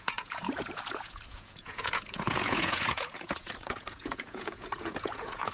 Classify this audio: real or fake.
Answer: fake